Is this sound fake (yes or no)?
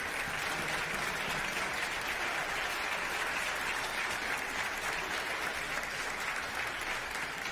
no